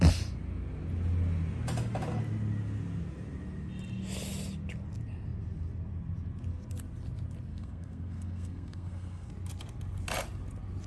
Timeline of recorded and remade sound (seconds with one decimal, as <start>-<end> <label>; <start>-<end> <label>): 0.0-7.5 recorded; 7.5-9.3 remade; 9.3-10.9 recorded